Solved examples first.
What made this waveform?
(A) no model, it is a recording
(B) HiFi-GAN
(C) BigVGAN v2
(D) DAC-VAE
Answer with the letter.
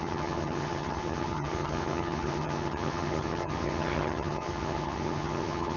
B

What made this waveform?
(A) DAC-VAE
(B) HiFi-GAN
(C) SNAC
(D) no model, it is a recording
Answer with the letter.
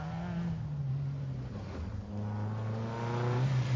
D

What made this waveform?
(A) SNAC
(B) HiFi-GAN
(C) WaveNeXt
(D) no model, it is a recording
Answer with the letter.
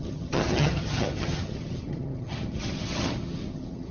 B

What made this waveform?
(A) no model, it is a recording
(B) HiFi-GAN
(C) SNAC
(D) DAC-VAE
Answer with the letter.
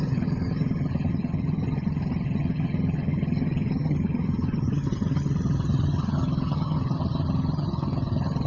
B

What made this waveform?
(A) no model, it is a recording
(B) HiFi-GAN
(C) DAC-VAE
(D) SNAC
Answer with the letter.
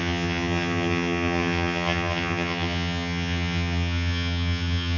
B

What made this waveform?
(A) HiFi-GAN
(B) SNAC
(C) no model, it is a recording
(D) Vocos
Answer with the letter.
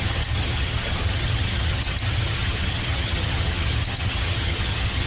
A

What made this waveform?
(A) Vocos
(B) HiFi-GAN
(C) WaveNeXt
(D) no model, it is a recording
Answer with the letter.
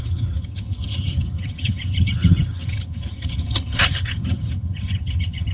B